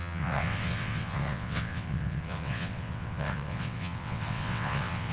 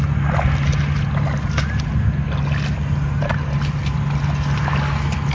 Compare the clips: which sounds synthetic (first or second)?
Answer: first